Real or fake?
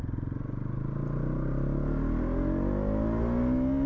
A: real